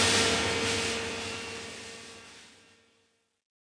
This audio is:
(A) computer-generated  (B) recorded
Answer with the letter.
B